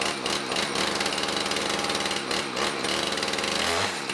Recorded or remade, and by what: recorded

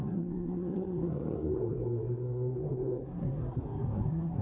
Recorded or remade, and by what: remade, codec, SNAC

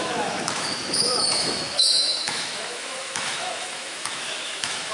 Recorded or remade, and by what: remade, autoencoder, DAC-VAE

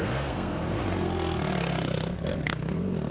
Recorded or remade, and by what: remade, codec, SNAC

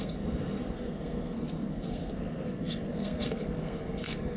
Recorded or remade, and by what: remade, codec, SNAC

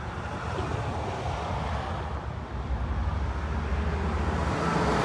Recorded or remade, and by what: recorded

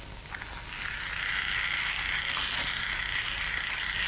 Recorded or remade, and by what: recorded